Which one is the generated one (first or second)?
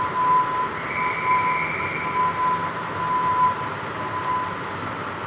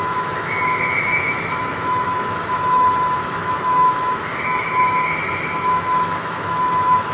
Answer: second